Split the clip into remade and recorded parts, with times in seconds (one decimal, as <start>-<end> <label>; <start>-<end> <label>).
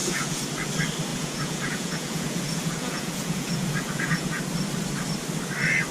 0.0-0.7 remade; 0.7-1.1 recorded; 1.1-4.4 remade; 4.4-5.9 recorded